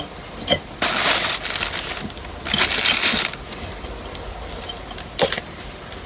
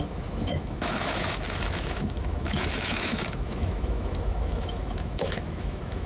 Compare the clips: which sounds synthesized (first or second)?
second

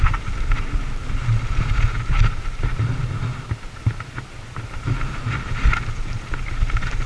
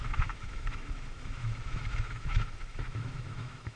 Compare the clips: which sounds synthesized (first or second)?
second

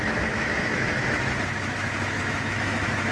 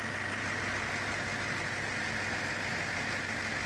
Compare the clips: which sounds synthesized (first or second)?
first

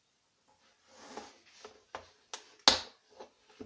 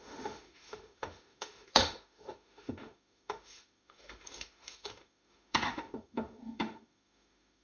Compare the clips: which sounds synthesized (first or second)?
second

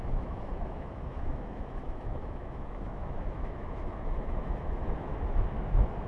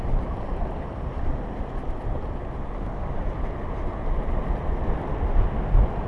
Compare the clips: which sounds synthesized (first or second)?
first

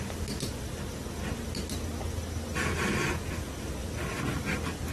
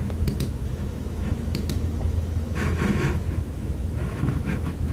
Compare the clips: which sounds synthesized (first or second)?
second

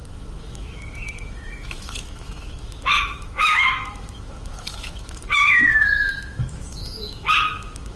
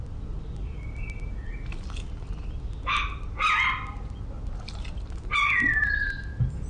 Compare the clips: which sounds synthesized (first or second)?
first